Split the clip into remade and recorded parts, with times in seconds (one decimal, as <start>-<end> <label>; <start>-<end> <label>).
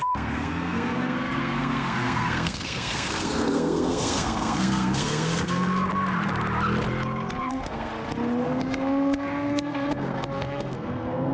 0.0-5.9 remade; 5.9-7.5 recorded; 7.5-7.9 remade; 7.9-8.4 recorded; 8.4-11.3 remade